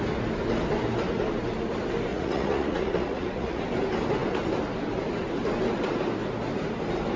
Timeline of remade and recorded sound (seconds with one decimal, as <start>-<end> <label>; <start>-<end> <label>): 0.0-2.1 recorded; 2.1-3.6 remade; 3.6-7.2 recorded